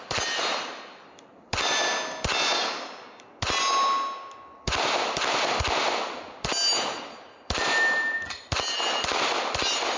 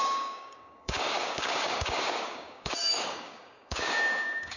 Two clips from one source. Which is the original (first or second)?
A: first